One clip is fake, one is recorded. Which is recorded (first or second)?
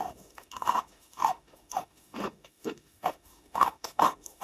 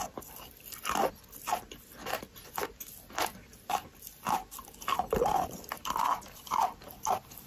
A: second